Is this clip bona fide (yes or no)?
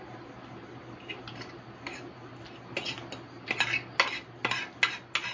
yes